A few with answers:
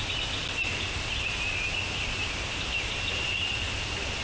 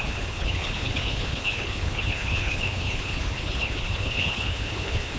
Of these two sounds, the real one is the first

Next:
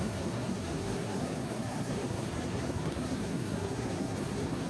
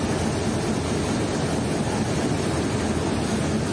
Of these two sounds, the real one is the second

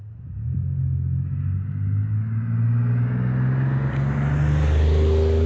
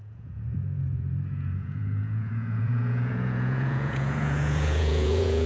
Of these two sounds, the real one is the first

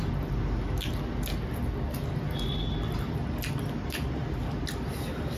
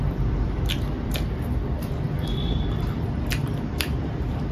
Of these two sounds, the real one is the first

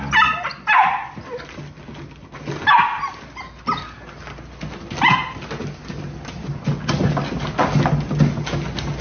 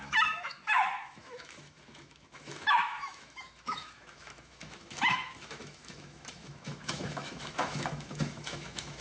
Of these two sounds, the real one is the first